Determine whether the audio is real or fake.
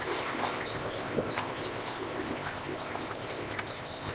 fake